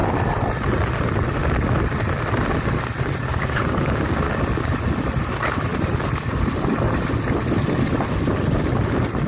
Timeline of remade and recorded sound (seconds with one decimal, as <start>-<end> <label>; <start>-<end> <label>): 0.0-3.3 recorded; 3.3-4.2 remade; 4.2-9.3 recorded